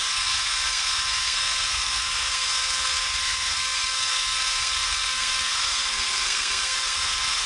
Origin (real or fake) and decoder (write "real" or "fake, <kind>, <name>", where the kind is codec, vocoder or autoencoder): fake, codec, SNAC